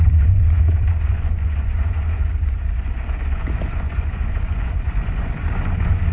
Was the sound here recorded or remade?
remade